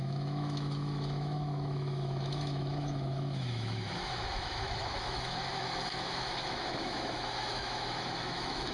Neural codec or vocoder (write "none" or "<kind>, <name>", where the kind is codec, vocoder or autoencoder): autoencoder, DAC-VAE